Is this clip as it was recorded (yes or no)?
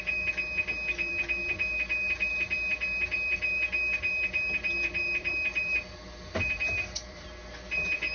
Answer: no